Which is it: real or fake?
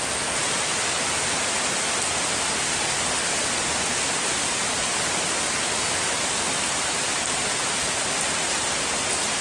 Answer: real